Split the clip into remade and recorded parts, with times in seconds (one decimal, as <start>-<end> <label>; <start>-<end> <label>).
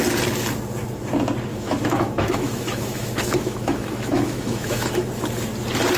0.0-1.5 recorded; 1.5-5.1 remade; 5.1-6.0 recorded